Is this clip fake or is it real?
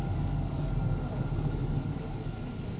fake